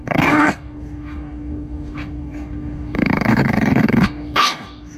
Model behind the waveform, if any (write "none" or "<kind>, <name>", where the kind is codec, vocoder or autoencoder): codec, DAC